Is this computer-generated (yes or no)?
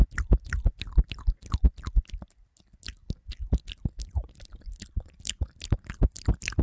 no